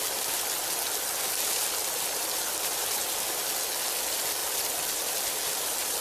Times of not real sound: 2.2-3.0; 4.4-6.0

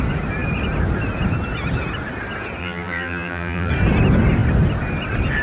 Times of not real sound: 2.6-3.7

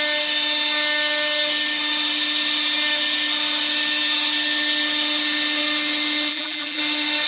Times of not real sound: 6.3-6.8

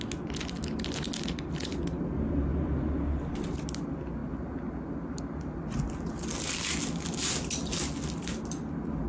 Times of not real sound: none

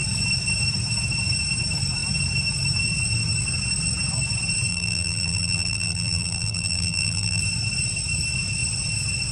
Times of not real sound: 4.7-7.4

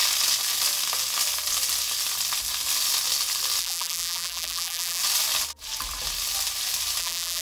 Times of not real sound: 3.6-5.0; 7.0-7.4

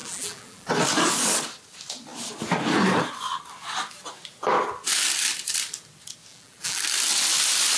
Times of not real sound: 0.0-0.7; 6.3-6.8